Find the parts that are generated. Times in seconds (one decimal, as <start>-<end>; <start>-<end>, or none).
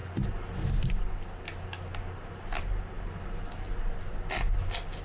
none